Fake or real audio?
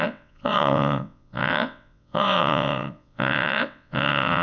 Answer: fake